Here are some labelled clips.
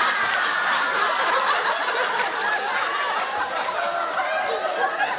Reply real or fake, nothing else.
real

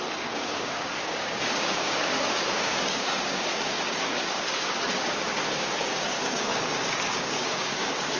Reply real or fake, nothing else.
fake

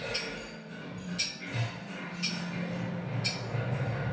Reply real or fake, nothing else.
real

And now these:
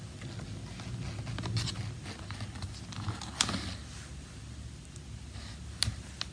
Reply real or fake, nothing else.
real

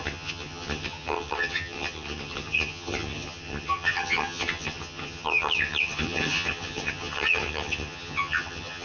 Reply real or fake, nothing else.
fake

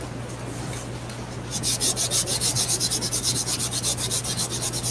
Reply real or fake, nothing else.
real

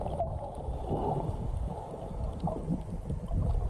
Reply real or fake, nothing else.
real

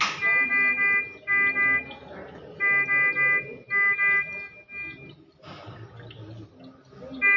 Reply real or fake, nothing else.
real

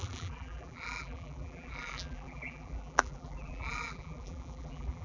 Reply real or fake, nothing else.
fake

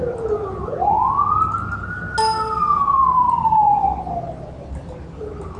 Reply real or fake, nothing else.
real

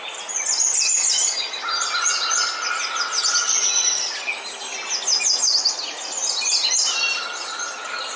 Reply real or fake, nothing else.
real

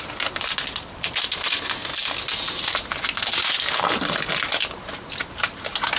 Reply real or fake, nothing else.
real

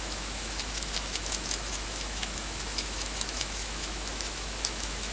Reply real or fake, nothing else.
fake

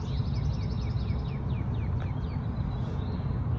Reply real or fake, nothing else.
real